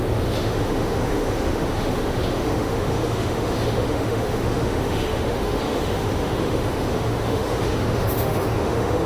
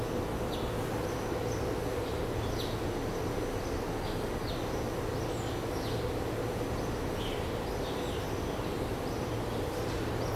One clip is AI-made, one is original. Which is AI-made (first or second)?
first